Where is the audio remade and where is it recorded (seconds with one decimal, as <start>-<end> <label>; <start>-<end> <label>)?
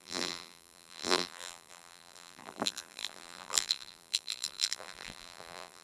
0.0-5.8 remade